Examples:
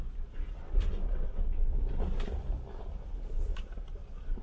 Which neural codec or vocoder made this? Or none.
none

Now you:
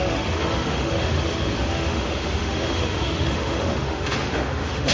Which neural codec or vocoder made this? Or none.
autoencoder, DAC-VAE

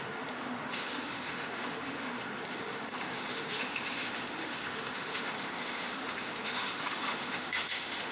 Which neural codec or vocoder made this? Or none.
autoencoder, DAC-VAE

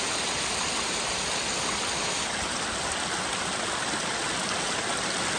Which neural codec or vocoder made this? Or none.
none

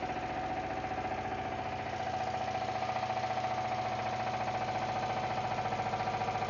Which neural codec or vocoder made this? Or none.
none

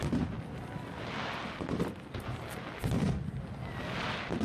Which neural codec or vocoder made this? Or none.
none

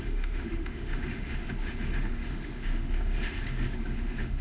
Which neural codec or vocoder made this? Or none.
autoencoder, DAC-VAE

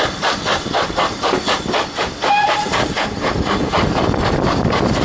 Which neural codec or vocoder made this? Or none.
none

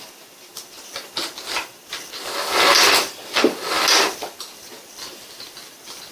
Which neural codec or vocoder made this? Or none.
none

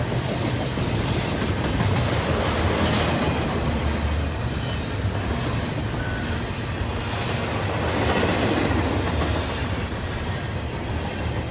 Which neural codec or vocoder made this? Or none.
none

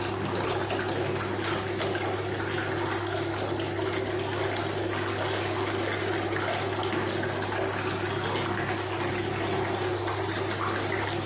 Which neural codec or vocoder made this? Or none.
none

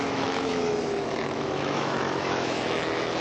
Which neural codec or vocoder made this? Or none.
autoencoder, DAC-VAE